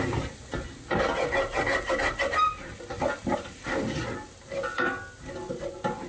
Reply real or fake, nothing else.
real